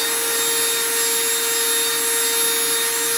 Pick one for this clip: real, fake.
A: real